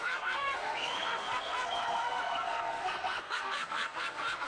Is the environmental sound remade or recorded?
remade